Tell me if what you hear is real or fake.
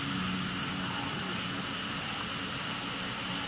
real